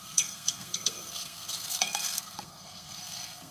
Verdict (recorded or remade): remade